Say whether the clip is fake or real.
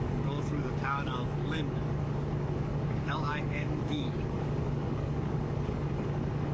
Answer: fake